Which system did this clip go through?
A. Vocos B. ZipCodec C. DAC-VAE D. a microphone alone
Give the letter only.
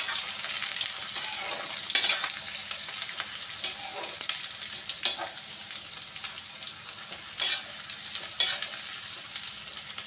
D